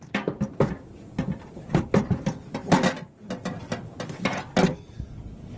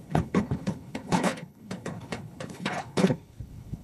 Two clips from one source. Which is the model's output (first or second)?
second